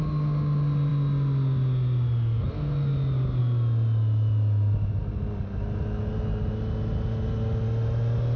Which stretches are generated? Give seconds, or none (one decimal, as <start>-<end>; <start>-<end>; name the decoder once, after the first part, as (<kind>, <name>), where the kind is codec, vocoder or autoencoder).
none